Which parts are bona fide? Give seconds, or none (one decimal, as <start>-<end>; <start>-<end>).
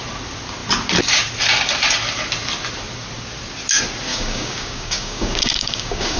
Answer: 0.0-4.1